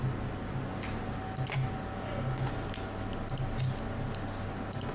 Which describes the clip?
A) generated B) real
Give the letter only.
B